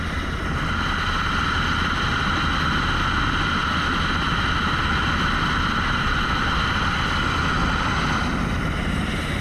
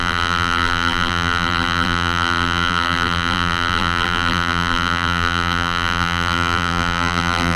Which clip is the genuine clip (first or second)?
first